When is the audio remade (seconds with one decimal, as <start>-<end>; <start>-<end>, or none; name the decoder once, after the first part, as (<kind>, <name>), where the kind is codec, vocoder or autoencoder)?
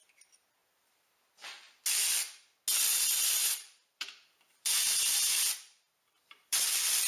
2.9-7.1 (vocoder, BigVGAN v2)